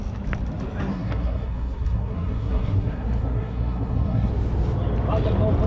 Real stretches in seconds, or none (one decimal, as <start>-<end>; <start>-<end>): 0.0-0.9; 4.3-5.7